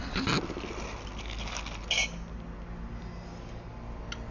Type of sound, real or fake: real